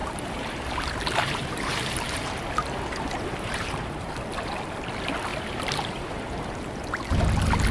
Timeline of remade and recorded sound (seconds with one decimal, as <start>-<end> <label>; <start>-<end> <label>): 0.0-4.1 remade; 4.1-5.3 recorded; 5.3-7.0 remade; 7.0-7.7 recorded